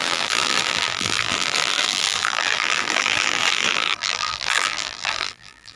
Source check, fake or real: fake